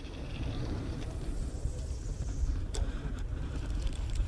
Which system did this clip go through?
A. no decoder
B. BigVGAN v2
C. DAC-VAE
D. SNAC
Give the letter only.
B